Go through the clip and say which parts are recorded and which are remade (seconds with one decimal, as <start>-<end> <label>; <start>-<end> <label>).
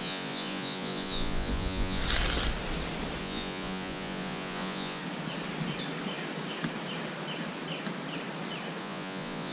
0.0-2.0 remade; 2.0-3.2 recorded; 3.2-5.0 remade; 5.0-8.8 recorded; 8.8-9.5 remade